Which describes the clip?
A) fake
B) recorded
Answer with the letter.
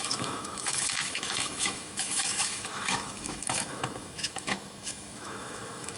A